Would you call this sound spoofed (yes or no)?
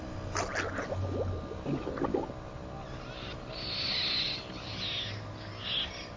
no